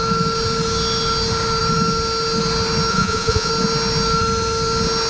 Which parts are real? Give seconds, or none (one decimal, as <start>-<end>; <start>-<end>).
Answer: 0.0-2.9; 3.5-5.1